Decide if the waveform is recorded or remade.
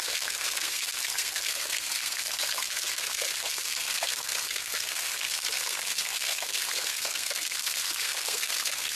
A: remade